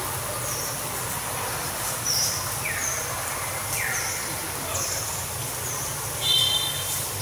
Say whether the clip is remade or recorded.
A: recorded